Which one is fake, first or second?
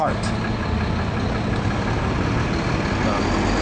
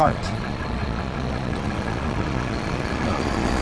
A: second